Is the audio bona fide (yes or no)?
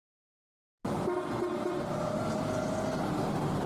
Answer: yes